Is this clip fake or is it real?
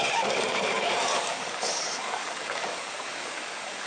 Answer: fake